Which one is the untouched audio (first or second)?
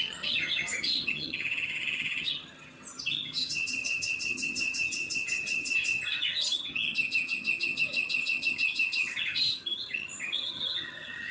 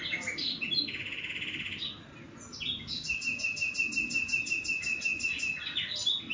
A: second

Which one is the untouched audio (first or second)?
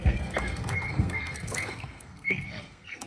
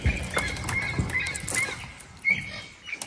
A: second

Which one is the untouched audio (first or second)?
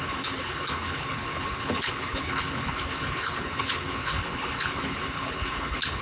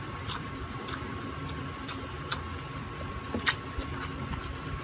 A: second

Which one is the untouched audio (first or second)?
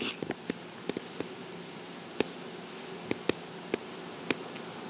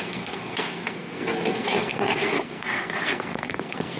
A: first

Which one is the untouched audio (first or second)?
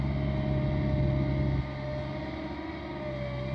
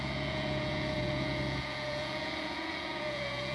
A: first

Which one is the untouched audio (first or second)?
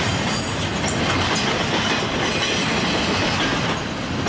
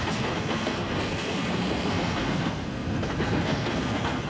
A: first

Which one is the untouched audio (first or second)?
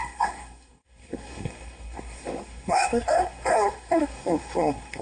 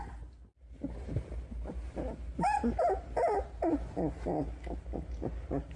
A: second